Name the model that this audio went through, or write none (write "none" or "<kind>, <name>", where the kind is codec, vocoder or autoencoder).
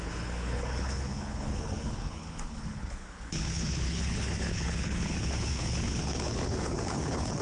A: codec, HILCodec